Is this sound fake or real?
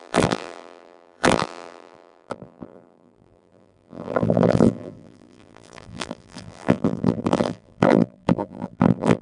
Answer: fake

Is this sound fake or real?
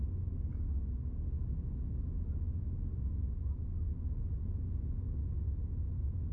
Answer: real